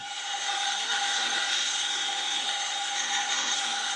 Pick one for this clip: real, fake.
fake